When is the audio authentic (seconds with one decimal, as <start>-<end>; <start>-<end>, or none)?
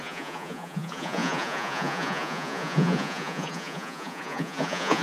none